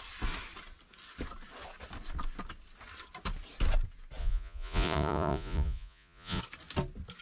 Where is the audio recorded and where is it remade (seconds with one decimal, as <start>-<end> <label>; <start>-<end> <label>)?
0.0-4.2 recorded; 4.2-6.4 remade; 6.4-7.2 recorded

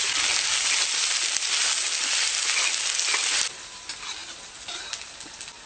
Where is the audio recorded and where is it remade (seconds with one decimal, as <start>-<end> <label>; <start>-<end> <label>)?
0.0-5.7 recorded

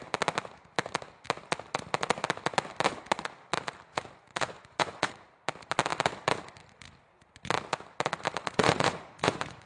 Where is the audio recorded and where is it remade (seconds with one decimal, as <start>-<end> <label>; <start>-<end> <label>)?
0.0-3.9 recorded; 3.9-5.1 remade; 5.1-8.4 recorded; 8.4-9.7 remade

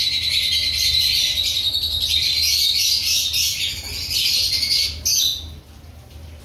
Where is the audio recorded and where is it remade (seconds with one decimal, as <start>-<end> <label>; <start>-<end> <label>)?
0.0-6.4 recorded

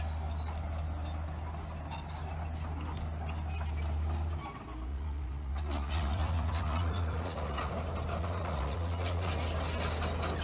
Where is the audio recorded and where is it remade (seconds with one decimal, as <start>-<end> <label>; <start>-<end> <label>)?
0.0-4.9 recorded; 4.9-7.7 remade; 7.7-8.2 recorded; 8.2-9.3 remade; 9.3-10.4 recorded